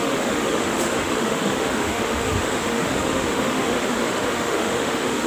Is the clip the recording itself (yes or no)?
no